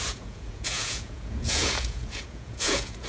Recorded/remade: remade